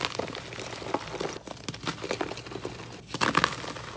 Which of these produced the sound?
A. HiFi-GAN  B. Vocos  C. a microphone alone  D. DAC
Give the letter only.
C